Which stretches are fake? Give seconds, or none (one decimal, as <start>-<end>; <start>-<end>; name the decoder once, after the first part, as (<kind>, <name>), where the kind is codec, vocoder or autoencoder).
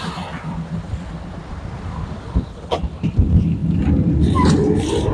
0.0-3.6 (vocoder, BigVGAN v2)